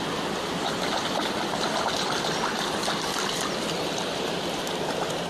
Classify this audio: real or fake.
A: real